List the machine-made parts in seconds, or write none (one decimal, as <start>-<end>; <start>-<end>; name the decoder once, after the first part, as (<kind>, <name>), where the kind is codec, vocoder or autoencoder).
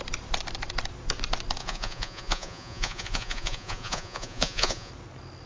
1.6-4.9 (vocoder, Vocos)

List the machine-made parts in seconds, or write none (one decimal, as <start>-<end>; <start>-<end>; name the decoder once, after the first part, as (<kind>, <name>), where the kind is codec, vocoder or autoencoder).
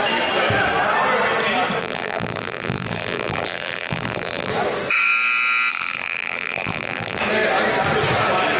1.8-4.5 (vocoder, BigVGAN v2); 5.7-7.2